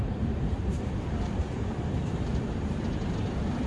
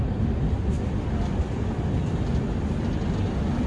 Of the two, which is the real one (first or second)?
second